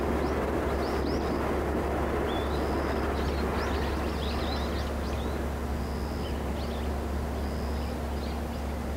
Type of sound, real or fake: real